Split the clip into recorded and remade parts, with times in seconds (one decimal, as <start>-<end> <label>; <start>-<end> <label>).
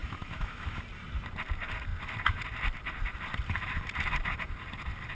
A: 0.0-0.8 remade; 0.8-5.1 recorded